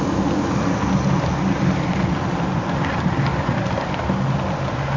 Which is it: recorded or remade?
recorded